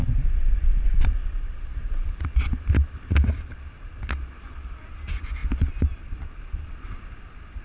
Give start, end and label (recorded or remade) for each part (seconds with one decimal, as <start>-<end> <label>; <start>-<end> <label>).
0.0-7.6 recorded